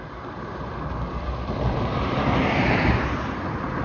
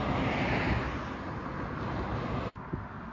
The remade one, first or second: first